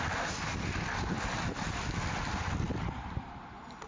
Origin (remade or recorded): recorded